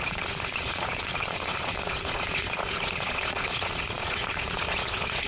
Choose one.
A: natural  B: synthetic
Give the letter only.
B